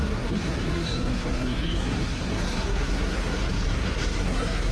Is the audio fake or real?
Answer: fake